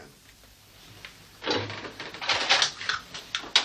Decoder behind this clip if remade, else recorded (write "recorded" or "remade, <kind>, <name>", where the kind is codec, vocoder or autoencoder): recorded